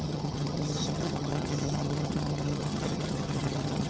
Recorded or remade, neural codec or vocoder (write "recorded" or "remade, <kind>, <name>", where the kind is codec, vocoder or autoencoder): remade, vocoder, HiFi-GAN